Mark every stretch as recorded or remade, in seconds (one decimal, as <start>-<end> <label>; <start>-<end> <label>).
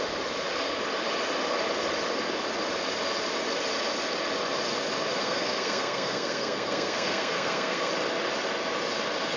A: 0.0-5.2 recorded; 5.2-7.9 remade; 7.9-9.4 recorded